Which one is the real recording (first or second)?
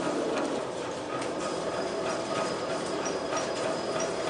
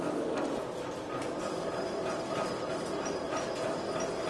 second